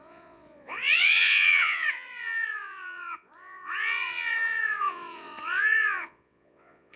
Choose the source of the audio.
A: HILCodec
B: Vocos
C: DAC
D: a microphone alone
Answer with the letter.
B